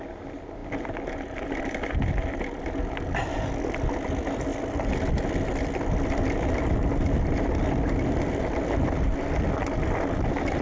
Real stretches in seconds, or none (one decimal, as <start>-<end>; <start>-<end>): 0.0-10.6